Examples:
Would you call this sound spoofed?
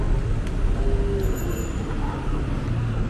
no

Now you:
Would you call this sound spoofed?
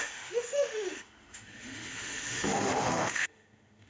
yes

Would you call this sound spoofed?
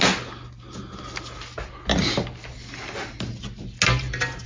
no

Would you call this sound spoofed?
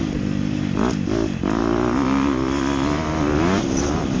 no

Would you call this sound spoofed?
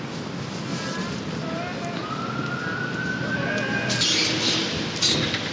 no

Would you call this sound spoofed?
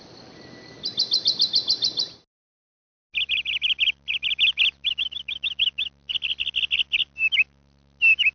no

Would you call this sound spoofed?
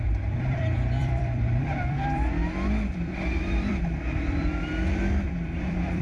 yes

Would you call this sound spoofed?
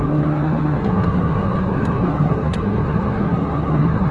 yes